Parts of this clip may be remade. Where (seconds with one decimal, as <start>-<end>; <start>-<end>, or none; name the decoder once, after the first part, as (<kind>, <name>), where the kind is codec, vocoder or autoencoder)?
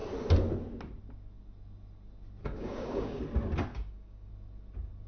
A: 2.4-3.2 (codec, DAC); 3.7-4.3